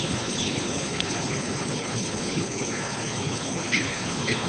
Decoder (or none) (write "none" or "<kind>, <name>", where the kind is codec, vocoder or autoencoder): codec, HILCodec